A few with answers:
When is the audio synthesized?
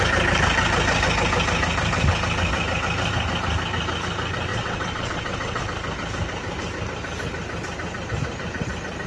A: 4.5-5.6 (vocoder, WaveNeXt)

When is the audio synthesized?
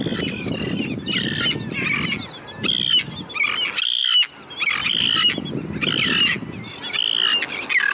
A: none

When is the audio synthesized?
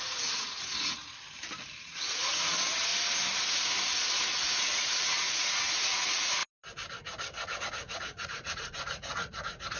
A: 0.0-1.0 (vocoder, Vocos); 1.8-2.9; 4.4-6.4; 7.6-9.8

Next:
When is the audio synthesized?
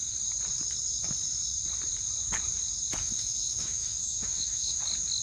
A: 3.0-4.8 (autoencoder, DAC-VAE)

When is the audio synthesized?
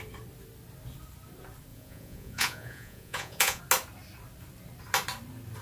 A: 1.7-3.6 (vocoder, Vocos)